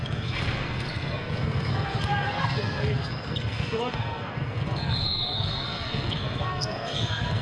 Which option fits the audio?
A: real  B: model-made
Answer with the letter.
B